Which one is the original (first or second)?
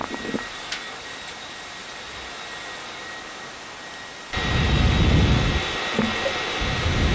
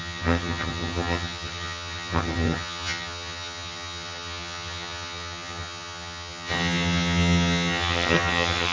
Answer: first